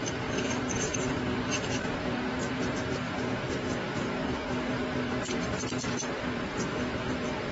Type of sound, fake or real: fake